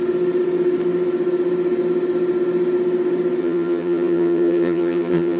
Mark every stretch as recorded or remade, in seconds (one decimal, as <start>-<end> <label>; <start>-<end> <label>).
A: 0.0-3.4 recorded; 3.4-5.4 remade